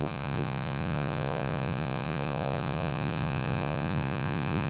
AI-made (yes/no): yes